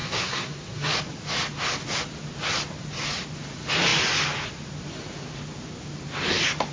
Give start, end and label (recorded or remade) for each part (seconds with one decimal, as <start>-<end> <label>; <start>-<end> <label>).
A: 0.0-0.9 remade; 0.9-6.7 recorded